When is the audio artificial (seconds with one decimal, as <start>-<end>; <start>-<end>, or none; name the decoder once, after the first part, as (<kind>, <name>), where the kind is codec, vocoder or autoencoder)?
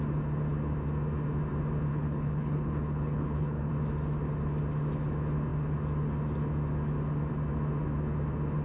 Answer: 1.9-3.7 (codec, HILCodec)